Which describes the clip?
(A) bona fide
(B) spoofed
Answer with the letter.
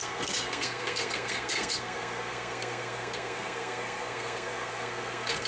B